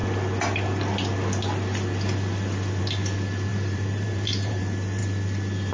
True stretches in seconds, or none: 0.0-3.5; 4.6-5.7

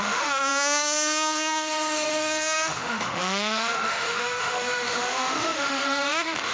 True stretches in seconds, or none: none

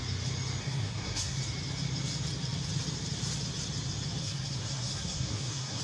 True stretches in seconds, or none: 0.0-0.6; 1.4-4.2

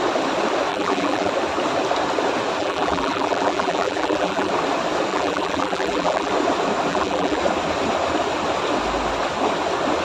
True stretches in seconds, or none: 0.0-0.7; 1.3-2.6; 4.5-5.1; 6.3-6.9; 7.4-10.0